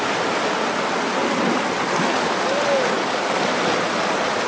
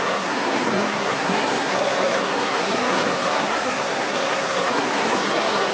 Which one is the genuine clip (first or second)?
first